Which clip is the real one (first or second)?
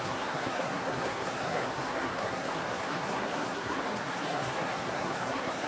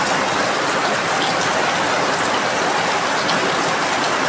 second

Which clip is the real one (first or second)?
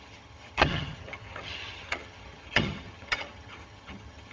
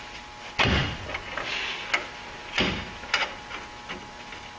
second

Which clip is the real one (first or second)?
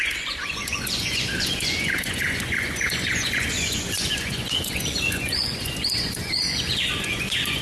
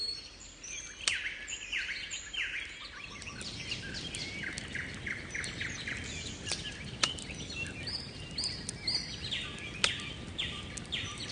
second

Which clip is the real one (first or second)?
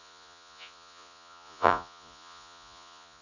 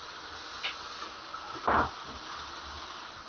second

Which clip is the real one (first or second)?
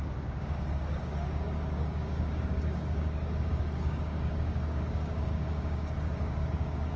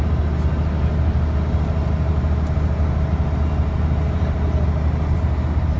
second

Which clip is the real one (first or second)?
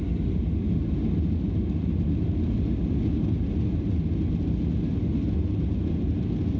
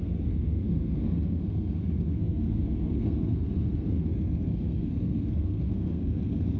first